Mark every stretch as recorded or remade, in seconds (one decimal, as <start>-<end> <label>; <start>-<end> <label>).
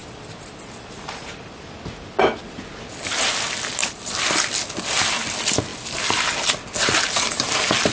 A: 0.0-3.8 recorded; 3.8-4.5 remade; 4.5-5.7 recorded; 5.7-6.2 remade; 6.2-7.9 recorded